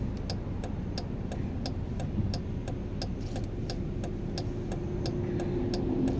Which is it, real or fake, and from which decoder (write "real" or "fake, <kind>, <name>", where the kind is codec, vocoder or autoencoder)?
real